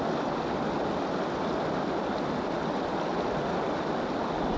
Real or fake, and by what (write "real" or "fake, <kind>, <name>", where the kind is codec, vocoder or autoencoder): real